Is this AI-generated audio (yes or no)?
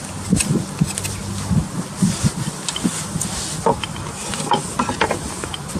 no